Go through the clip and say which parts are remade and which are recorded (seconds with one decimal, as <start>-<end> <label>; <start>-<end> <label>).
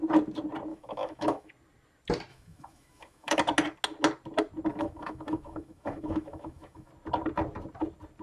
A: 0.0-0.7 recorded; 0.7-1.5 remade; 1.5-2.3 recorded; 2.3-3.4 remade; 3.4-4.7 recorded; 4.7-6.9 remade; 6.9-8.2 recorded